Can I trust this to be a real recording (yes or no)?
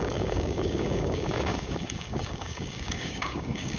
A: no